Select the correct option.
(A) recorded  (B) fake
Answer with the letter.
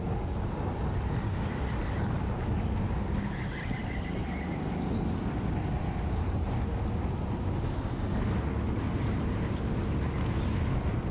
A